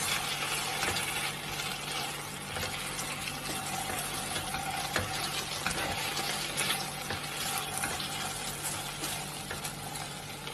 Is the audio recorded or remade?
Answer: recorded